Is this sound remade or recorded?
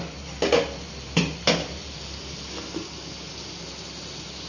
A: recorded